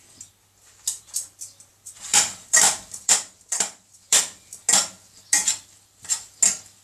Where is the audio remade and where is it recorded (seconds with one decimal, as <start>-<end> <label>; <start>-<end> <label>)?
0.0-1.7 recorded; 1.7-4.2 remade; 4.2-6.8 recorded